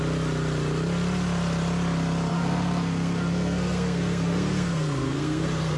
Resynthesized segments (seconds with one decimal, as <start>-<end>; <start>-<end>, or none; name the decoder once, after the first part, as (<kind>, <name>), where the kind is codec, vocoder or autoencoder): 2.3-5.8 (codec, SNAC)